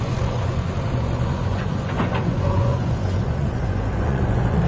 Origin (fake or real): fake